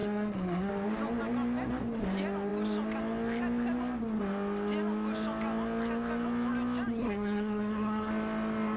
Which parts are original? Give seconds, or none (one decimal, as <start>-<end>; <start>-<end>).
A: 0.7-7.0; 8.1-8.8